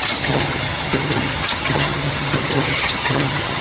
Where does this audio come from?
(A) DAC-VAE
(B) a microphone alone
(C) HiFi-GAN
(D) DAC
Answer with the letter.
C